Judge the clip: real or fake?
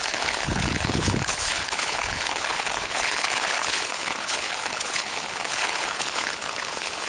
fake